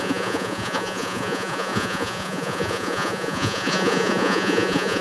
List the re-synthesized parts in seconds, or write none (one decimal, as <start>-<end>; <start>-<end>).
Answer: 0.0-5.0